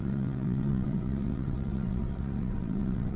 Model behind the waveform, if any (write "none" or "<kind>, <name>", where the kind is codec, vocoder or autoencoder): vocoder, WaveNeXt